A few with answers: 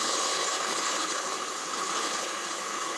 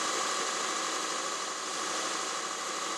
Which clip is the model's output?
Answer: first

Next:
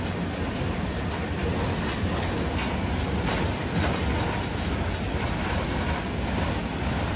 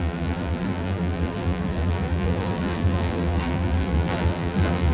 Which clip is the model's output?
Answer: second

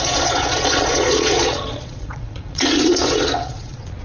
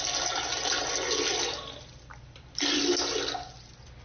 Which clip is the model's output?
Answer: first